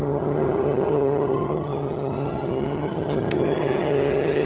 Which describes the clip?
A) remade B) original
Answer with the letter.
A